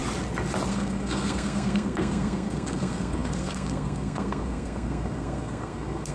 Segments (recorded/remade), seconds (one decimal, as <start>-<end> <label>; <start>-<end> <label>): 0.0-0.7 recorded; 0.7-6.1 remade